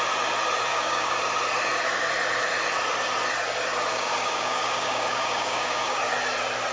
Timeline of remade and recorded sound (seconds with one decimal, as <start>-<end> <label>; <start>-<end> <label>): 0.0-0.7 recorded; 0.7-1.2 remade; 1.2-3.9 recorded; 3.9-6.0 remade; 6.0-6.7 recorded